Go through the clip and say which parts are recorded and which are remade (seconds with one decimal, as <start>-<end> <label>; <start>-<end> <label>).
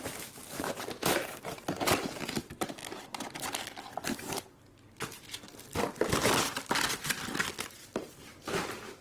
0.0-2.8 remade; 2.8-4.4 recorded; 4.4-5.5 remade; 5.5-7.6 recorded; 7.6-9.0 remade